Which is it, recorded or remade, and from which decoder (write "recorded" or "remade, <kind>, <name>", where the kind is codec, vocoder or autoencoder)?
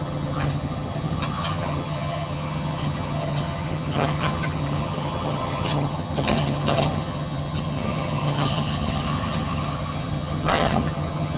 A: remade, vocoder, HiFi-GAN